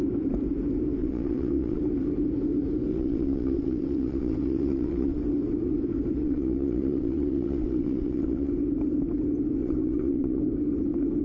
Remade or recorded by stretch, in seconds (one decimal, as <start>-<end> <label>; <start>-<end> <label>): 0.0-1.0 recorded; 1.0-1.8 remade; 1.8-2.9 recorded; 2.9-5.2 remade; 5.2-6.2 recorded; 6.2-8.5 remade; 8.5-9.6 recorded; 9.6-10.4 remade; 10.4-11.2 recorded